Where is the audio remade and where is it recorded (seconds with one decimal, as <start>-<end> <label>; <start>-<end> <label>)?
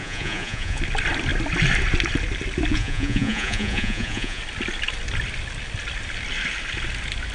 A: 0.0-0.8 remade; 0.8-2.7 recorded; 2.7-4.4 remade; 4.4-7.3 recorded